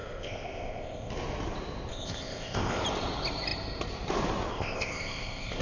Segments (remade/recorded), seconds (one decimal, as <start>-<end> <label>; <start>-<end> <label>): 0.0-1.1 remade; 1.1-1.9 recorded; 1.9-2.8 remade; 2.8-4.5 recorded; 4.5-5.6 remade